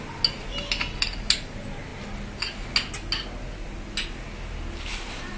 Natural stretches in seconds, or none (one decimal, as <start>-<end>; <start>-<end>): 0.0-5.4